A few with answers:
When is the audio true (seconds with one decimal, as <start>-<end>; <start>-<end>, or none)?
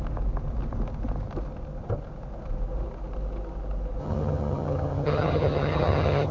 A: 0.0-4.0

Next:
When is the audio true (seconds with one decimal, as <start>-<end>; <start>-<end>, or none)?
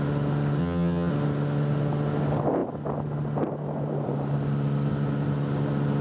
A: 0.0-0.6; 1.1-6.0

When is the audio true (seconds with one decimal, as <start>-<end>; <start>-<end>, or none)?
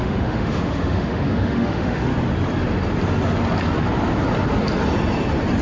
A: 2.1-5.6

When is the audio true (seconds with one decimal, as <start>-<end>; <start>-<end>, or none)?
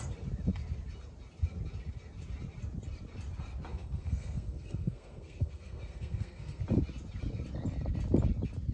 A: 0.0-3.7; 6.6-8.7